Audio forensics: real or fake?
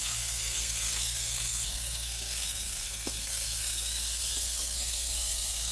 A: fake